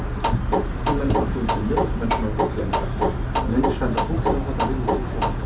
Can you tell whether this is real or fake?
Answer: real